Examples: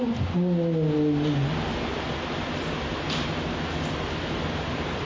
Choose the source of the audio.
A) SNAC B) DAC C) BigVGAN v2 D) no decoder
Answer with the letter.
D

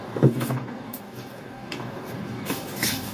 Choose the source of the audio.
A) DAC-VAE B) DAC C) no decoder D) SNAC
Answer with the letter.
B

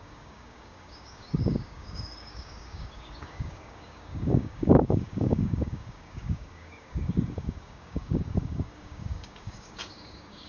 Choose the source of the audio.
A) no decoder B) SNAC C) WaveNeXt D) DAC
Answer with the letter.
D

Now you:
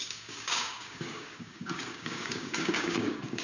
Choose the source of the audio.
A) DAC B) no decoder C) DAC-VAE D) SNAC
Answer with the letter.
A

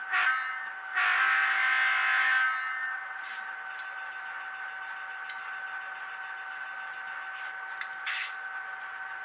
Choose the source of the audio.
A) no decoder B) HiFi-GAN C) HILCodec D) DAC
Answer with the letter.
A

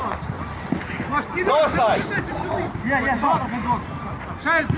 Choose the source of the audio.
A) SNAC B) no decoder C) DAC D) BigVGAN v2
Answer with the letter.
B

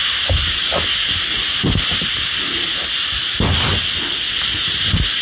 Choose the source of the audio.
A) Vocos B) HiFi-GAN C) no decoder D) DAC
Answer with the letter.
C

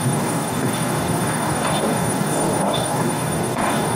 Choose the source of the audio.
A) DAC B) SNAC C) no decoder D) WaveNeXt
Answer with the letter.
A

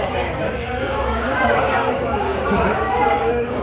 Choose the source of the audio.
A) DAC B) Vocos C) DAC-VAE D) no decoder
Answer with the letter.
A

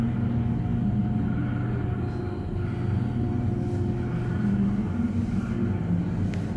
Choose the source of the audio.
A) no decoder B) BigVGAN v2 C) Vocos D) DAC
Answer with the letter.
A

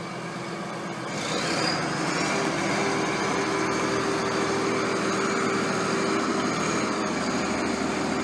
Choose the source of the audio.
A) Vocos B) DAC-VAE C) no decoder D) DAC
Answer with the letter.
C